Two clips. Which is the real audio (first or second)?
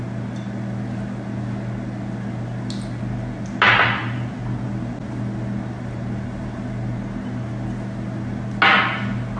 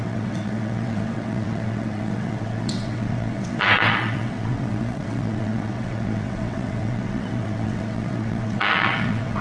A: first